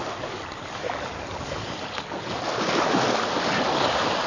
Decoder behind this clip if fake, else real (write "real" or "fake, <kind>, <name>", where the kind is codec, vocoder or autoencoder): real